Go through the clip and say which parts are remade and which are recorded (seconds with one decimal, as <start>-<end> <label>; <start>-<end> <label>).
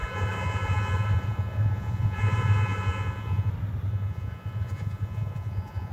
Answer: 0.0-3.5 remade; 3.5-3.9 recorded; 3.9-5.9 remade